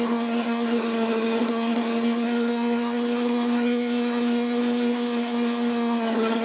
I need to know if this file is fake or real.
fake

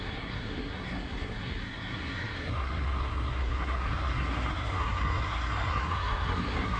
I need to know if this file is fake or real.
fake